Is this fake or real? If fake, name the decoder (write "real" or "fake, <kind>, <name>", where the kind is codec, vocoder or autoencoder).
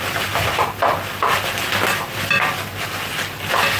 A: real